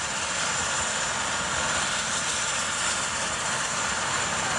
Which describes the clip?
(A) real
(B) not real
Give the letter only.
A